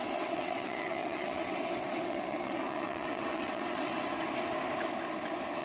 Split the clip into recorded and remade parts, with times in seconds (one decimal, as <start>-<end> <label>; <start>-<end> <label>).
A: 0.0-3.9 remade; 3.9-5.6 recorded